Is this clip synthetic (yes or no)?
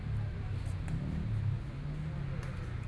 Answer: no